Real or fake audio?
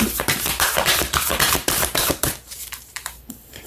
fake